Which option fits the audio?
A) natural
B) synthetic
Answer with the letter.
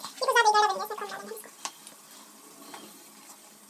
A